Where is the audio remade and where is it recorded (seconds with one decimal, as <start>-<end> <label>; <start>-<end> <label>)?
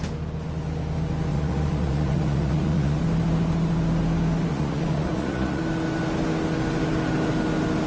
0.0-1.3 recorded; 1.3-3.0 remade; 3.0-4.5 recorded; 4.5-5.6 remade; 5.6-7.9 recorded